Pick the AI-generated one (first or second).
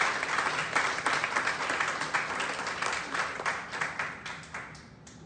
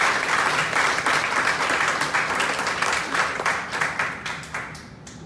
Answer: second